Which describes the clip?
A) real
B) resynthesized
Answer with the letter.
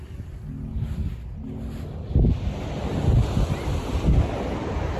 A